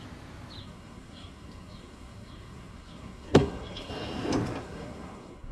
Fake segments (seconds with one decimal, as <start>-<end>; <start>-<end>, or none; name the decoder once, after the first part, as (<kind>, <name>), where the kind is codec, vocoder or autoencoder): 0.6-3.9 (codec, SNAC); 4.6-5.5